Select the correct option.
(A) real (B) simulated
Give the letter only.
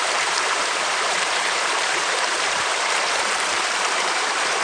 B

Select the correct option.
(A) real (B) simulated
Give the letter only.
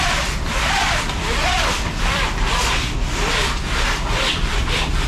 B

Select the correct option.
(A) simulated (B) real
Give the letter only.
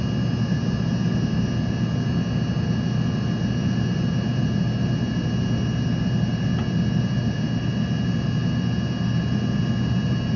B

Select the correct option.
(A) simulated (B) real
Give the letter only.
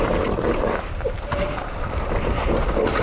B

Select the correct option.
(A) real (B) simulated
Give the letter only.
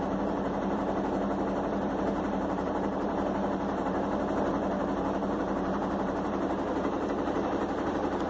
B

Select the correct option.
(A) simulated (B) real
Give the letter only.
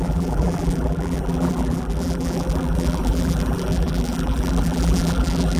A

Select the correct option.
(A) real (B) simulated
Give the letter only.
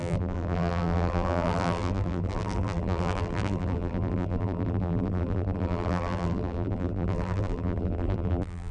B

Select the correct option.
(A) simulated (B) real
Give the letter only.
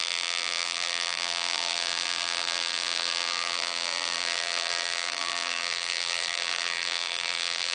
A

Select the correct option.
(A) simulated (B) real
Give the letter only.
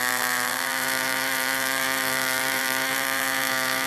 A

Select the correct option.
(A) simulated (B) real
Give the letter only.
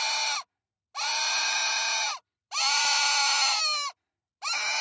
B